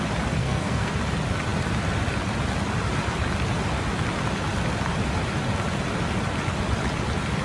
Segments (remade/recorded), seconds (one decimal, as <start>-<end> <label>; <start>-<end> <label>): 0.0-0.4 recorded; 0.4-0.9 remade; 0.9-7.4 recorded